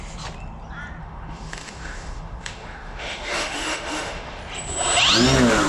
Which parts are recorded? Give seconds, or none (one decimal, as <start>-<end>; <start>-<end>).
0.0-1.0; 4.4-5.7